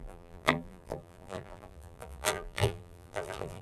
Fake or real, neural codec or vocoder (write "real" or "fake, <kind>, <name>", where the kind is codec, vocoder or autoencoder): fake, vocoder, BigVGAN v2